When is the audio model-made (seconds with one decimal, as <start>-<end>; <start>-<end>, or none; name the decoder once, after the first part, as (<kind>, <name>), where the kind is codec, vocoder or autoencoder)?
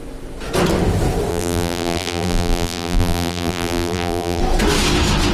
1.3-4.4 (vocoder, BigVGAN v2)